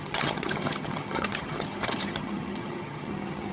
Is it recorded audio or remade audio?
remade